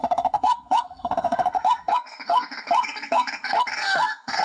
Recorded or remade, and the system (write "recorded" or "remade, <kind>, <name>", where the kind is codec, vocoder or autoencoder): remade, codec, SNAC